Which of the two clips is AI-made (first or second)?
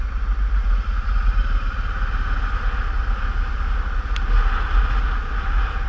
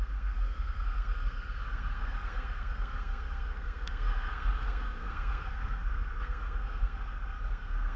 second